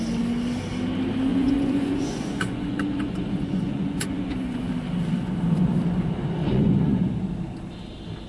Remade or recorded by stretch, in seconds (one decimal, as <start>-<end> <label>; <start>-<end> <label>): 0.0-1.3 recorded; 1.3-4.7 remade; 4.7-6.4 recorded; 6.4-7.1 remade; 7.1-8.3 recorded